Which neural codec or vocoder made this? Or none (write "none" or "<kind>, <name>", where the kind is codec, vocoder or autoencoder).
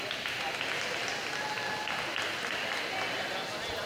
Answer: none